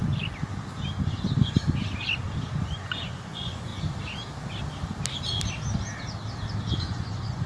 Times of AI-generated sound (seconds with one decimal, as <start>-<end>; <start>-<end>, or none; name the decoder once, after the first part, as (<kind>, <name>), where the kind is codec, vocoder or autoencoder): 2.6-3.7 (vocoder, Vocos); 6.8-7.5